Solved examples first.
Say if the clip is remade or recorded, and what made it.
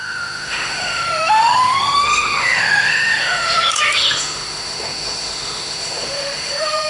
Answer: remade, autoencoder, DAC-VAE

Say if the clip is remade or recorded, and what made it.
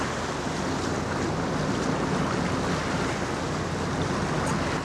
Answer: recorded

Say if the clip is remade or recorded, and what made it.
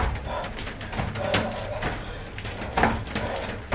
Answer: recorded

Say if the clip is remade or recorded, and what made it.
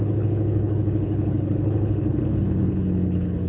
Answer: remade, codec, HILCodec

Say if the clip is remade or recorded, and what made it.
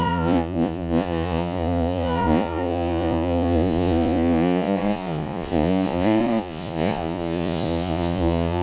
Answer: remade, vocoder, Vocos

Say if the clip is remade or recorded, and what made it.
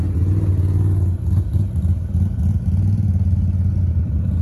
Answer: recorded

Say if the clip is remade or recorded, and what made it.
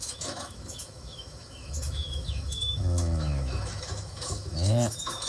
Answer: remade, autoencoder, DAC-VAE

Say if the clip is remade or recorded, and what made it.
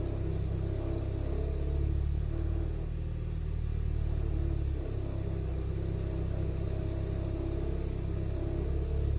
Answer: recorded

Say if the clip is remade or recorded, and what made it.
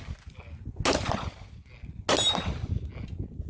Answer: recorded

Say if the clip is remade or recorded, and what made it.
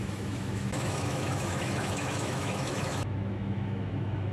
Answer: remade, autoencoder, DAC-VAE